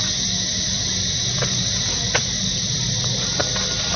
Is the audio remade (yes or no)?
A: no